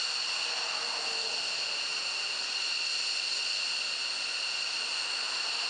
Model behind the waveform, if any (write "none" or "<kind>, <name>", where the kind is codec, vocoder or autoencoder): none